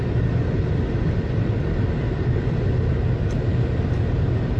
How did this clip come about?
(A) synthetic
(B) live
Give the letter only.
B